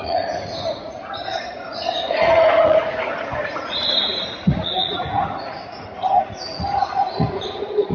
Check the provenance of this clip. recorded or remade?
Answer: remade